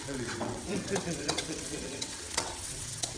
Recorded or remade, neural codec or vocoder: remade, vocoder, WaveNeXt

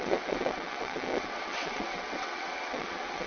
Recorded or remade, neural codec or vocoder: remade, vocoder, WaveNeXt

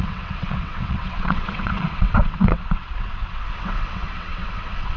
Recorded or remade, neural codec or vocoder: remade, vocoder, WaveNeXt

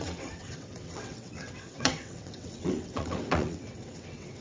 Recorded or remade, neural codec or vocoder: remade, vocoder, WaveNeXt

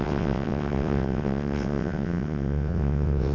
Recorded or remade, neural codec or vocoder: remade, vocoder, WaveNeXt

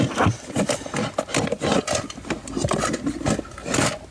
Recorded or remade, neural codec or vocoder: recorded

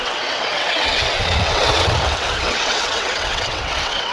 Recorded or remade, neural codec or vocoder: remade, vocoder, WaveNeXt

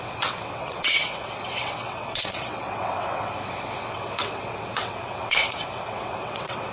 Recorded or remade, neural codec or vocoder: remade, vocoder, WaveNeXt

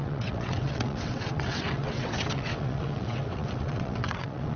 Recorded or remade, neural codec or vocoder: remade, vocoder, WaveNeXt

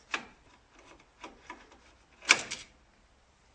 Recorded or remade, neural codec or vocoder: recorded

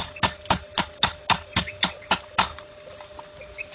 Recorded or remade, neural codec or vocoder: recorded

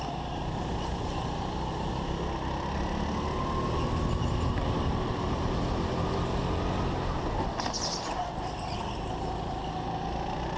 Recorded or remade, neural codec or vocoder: recorded